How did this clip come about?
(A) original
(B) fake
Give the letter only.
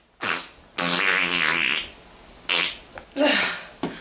A